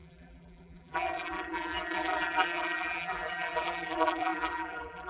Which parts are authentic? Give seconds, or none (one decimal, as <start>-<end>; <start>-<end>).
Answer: none

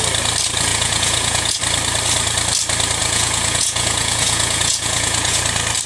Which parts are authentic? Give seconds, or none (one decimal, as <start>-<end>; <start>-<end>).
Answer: 0.0-0.7; 1.6-3.0; 5.4-5.9

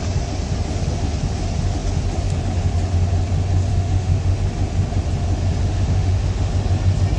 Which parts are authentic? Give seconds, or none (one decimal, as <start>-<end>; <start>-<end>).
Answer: 0.0-3.7; 4.4-5.6; 6.5-7.2